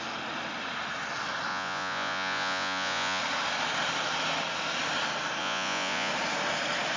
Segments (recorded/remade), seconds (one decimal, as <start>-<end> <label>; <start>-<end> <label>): 0.0-1.5 recorded; 1.5-3.2 remade; 3.2-5.4 recorded; 5.4-6.1 remade; 6.1-7.0 recorded

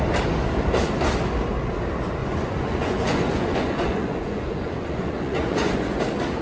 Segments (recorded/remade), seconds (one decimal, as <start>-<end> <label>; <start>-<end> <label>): 0.0-2.2 recorded; 2.2-6.0 remade; 6.0-6.4 recorded

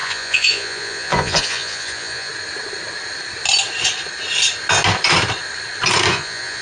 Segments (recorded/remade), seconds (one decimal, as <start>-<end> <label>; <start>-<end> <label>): 0.0-2.3 remade; 2.3-6.1 recorded; 6.1-6.6 remade

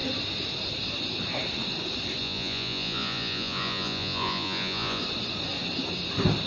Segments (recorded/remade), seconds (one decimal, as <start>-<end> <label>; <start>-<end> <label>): 0.0-2.2 recorded; 2.2-5.0 remade; 5.0-6.5 recorded